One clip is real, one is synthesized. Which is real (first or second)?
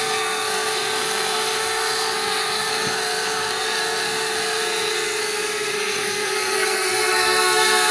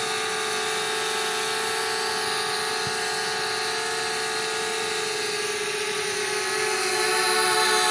second